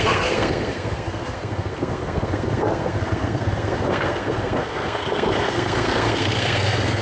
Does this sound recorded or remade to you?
remade